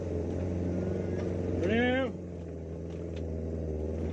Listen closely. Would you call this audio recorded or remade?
recorded